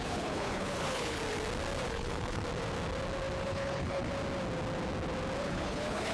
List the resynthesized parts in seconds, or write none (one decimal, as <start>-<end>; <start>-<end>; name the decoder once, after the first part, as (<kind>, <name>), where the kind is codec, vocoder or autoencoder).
0.0-1.2 (codec, HILCodec); 1.9-2.4; 3.4-4.1; 5.4-6.1